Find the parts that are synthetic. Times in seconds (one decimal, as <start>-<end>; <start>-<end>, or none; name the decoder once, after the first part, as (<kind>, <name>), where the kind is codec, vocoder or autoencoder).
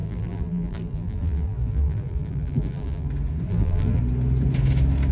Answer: 0.0-3.1 (vocoder, BigVGAN v2); 3.5-4.0